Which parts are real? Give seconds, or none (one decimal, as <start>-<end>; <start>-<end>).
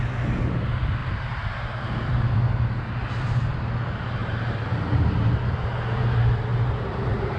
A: 0.0-1.0; 2.1-3.0; 3.7-4.2; 6.0-6.5